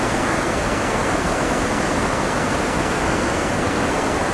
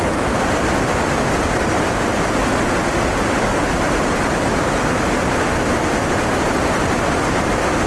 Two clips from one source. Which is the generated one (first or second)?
first